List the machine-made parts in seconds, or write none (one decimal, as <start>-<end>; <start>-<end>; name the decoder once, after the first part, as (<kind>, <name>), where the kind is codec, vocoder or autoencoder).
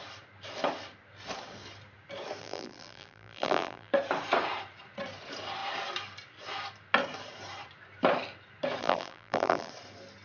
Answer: 2.4-3.9 (vocoder, BigVGAN v2); 8.8-9.7